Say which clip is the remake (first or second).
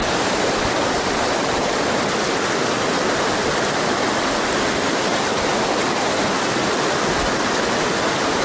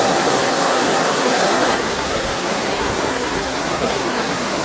second